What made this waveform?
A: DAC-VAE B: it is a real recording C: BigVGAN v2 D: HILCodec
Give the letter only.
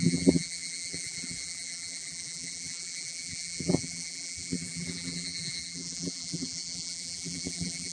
C